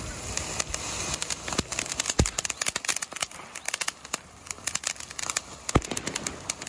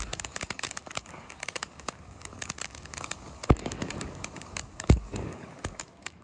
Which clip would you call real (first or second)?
first